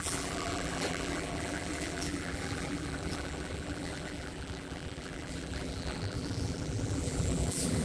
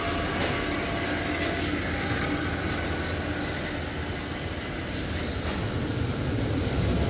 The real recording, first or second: second